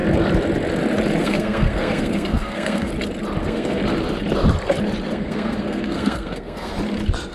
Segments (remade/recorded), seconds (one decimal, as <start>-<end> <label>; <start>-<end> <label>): 0.0-1.2 recorded; 1.2-2.9 remade; 2.9-3.4 recorded; 3.4-3.8 remade; 3.8-5.1 recorded; 5.1-6.7 remade; 6.7-7.3 recorded